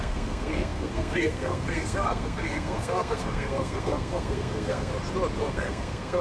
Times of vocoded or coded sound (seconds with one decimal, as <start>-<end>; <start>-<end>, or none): 0.0-4.9; 5.4-6.2